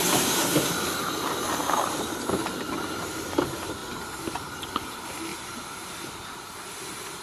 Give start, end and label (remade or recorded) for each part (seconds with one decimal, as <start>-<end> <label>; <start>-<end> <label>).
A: 0.0-1.6 recorded; 1.6-2.7 remade; 2.7-5.3 recorded; 5.3-5.9 remade; 5.9-7.2 recorded